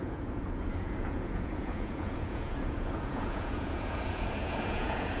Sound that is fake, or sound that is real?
fake